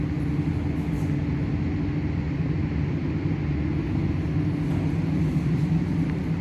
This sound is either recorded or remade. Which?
recorded